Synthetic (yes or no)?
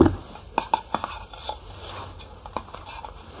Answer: no